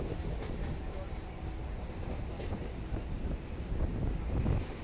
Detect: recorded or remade recorded